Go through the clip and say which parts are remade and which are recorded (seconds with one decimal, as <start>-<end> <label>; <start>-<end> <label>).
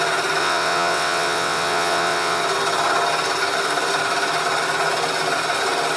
0.0-0.4 recorded; 0.4-2.4 remade; 2.4-6.0 recorded